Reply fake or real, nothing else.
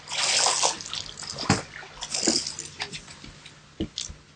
real